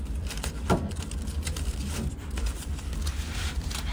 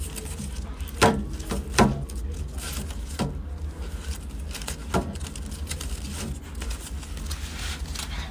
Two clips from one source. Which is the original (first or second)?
second